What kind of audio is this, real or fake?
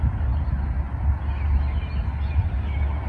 real